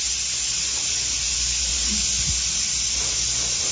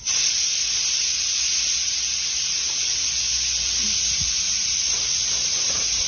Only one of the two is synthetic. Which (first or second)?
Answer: second